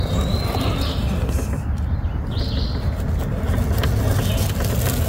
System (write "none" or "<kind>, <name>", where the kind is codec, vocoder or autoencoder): none